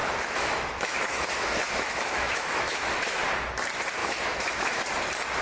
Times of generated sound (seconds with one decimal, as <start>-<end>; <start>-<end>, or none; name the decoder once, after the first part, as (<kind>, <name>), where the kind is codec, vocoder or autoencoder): 0.0-3.2 (autoencoder, DAC-VAE); 4.0-4.8